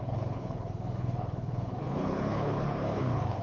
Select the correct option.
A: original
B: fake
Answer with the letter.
B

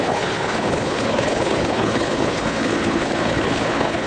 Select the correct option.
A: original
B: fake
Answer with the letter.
B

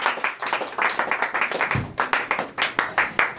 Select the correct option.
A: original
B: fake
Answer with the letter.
A